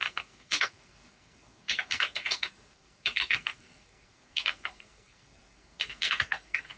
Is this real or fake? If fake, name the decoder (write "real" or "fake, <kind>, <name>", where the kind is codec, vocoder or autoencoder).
fake, codec, SNAC